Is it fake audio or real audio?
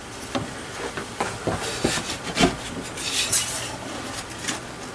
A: real